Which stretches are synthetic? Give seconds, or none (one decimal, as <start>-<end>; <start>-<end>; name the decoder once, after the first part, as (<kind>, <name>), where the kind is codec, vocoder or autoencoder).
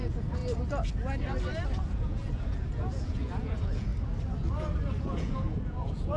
0.0-0.4 (vocoder, Vocos); 1.9-3.9; 5.0-6.2